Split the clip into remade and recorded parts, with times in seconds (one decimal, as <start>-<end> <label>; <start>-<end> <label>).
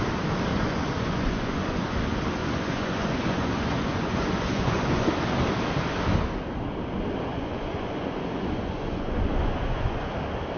0.0-0.5 recorded; 0.5-2.0 remade; 2.0-2.4 recorded; 2.4-5.1 remade; 5.1-7.3 recorded; 7.3-10.1 remade; 10.1-10.6 recorded